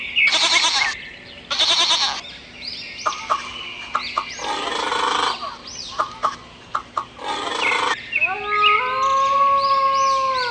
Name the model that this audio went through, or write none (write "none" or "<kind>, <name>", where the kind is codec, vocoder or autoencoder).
none